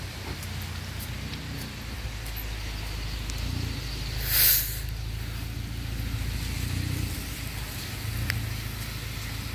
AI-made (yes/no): no